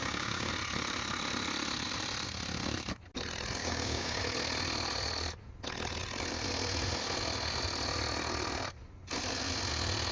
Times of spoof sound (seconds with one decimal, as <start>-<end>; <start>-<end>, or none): 0.0-0.5; 3.6-4.2